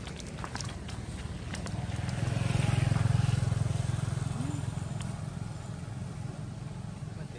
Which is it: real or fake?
real